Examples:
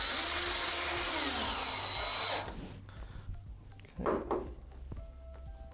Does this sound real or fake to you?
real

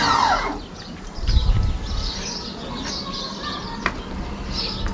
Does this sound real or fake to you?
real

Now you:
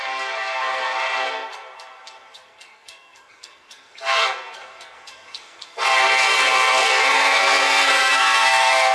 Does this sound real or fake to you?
fake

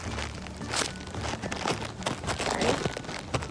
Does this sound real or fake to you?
real